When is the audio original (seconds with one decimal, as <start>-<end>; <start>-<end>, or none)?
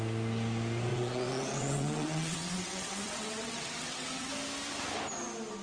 0.0-0.9; 4.3-5.6